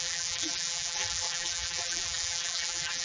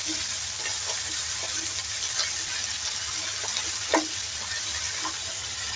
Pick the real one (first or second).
second